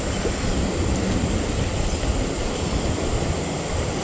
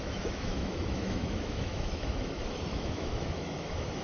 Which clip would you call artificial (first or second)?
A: second